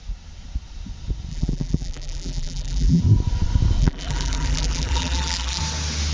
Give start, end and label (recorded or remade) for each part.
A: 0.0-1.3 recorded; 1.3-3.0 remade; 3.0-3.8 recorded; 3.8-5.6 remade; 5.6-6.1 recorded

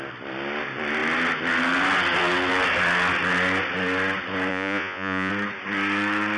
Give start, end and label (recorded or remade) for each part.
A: 0.0-4.5 recorded; 4.5-5.3 remade; 5.3-6.4 recorded

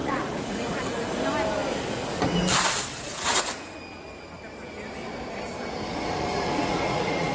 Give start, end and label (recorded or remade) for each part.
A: 0.0-0.8 remade; 0.8-2.9 recorded; 2.9-3.4 remade; 3.4-5.9 recorded; 5.9-7.3 remade

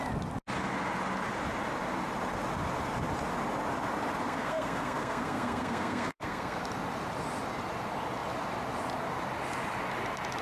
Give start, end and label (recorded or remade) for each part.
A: 0.0-4.2 recorded; 4.2-6.6 remade; 6.6-10.4 recorded

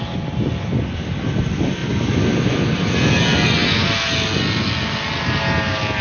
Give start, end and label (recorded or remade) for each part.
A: 0.0-6.0 recorded

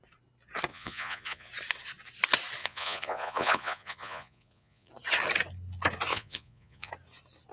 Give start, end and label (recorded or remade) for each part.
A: 0.0-0.7 recorded; 0.7-1.5 remade; 1.5-2.6 recorded; 2.6-4.9 remade; 4.9-6.1 recorded; 6.1-6.9 remade; 6.9-7.5 recorded

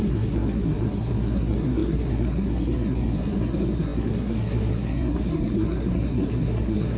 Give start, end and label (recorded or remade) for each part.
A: 0.0-7.0 remade

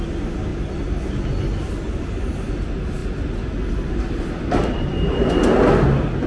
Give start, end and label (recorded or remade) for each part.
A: 0.0-6.3 recorded